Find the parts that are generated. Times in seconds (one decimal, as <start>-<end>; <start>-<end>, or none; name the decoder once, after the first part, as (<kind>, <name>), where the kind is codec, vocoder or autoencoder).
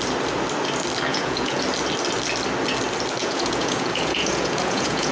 1.1-1.6 (vocoder, Vocos); 3.2-5.1